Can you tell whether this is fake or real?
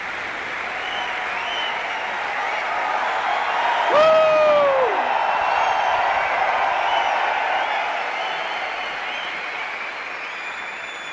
real